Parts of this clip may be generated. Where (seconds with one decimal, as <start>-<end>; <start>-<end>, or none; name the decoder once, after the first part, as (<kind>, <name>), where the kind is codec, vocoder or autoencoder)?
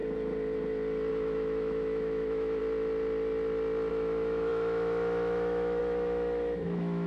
1.1-2.6 (autoencoder, DAC-VAE); 3.9-7.1